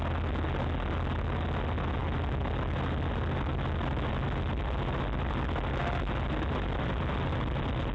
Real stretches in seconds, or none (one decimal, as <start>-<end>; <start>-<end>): 0.0-7.9